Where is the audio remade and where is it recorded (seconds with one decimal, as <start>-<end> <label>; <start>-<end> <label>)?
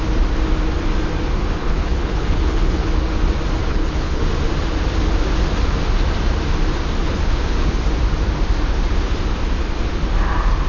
0.0-1.4 recorded; 1.4-2.9 remade; 2.9-3.7 recorded; 3.7-4.2 remade; 4.2-7.0 recorded; 7.0-7.7 remade; 7.7-10.7 recorded